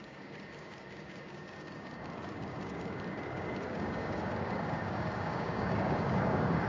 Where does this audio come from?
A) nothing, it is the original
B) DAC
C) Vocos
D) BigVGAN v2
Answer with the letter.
B